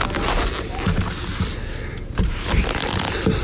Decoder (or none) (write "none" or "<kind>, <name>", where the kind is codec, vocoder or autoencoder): none